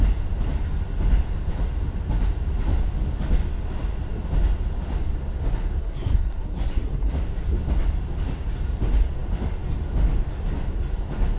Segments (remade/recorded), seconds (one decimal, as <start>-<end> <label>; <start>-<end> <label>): 0.0-5.8 recorded; 5.8-7.1 remade; 7.1-11.4 recorded